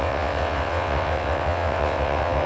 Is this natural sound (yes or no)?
no